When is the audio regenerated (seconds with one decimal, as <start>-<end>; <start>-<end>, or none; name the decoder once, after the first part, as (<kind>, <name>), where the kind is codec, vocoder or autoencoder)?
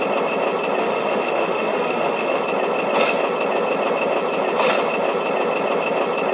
0.8-2.4 (autoencoder, DAC-VAE)